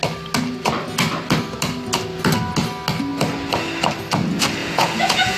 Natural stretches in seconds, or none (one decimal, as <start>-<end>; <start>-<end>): 0.0-4.6